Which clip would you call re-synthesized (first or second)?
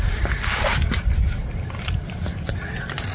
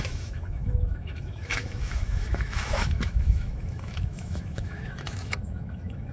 second